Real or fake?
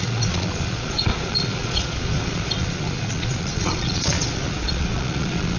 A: fake